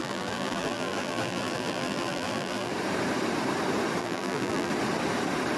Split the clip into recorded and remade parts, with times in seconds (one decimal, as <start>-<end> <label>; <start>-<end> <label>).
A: 0.0-2.7 remade; 2.7-4.0 recorded; 4.0-4.7 remade; 4.7-5.6 recorded